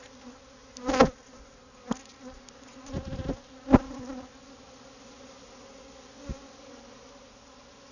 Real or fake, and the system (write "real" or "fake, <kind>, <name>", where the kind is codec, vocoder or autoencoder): real